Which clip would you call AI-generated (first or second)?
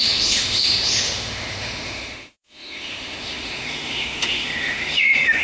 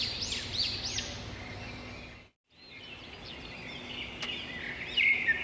first